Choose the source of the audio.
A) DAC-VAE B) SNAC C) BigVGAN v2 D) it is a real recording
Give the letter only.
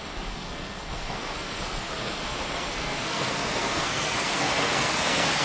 B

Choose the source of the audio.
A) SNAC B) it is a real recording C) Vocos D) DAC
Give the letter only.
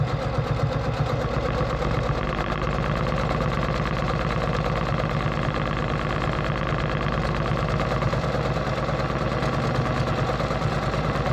B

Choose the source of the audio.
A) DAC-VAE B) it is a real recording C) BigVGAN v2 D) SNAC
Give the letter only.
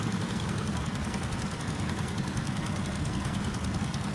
D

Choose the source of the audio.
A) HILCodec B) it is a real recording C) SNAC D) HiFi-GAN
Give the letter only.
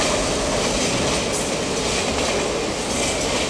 B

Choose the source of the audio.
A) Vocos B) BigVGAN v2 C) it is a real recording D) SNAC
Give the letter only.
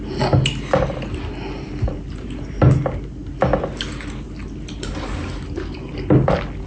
C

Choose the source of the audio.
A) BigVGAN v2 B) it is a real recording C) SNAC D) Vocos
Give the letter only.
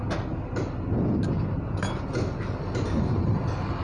B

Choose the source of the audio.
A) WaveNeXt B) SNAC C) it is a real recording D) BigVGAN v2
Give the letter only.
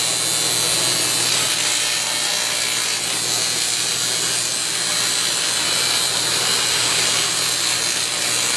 C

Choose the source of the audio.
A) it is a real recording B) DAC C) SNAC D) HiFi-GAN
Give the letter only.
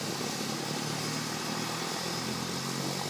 A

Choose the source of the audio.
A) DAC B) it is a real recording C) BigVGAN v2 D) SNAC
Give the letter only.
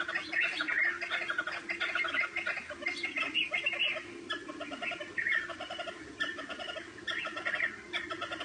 B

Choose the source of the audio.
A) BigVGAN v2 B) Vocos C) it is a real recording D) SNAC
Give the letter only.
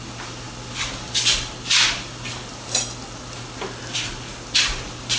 C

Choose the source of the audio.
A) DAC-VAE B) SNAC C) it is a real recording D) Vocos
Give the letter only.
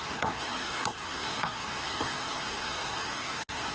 B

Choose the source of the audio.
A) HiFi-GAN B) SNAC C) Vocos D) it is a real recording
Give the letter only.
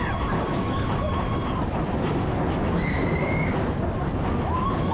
D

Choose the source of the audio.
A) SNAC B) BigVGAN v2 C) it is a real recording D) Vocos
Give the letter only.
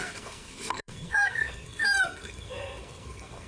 A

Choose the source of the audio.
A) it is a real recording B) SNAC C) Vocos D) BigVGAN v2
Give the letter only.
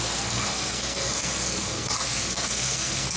B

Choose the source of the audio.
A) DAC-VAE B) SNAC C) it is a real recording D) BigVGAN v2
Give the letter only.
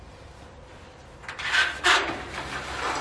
C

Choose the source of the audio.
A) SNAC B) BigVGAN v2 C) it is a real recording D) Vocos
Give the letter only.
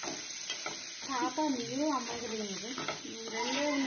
C